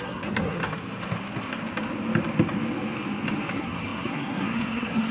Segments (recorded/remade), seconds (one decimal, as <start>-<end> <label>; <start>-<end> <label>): 0.0-0.6 remade; 0.6-3.5 recorded; 3.5-5.1 remade